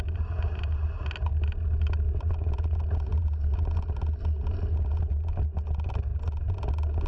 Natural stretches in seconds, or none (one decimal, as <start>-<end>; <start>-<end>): 0.0-7.1